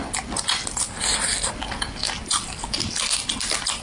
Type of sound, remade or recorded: recorded